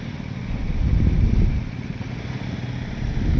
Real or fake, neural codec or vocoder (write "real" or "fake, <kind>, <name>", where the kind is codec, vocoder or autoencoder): real